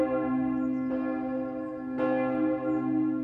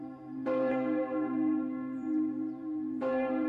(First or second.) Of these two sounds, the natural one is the first